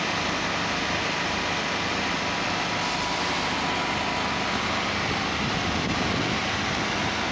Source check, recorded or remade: recorded